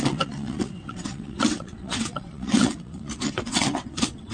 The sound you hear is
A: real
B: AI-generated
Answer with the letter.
B